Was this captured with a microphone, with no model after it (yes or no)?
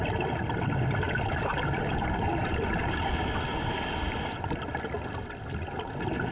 yes